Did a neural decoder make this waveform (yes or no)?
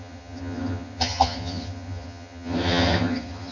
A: yes